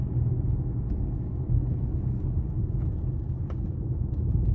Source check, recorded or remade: recorded